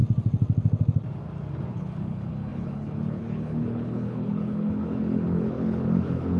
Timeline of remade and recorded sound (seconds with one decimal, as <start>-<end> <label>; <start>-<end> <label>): 0.0-1.7 recorded; 1.7-6.4 remade